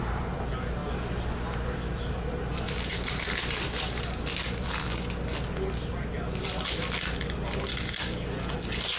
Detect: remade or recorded recorded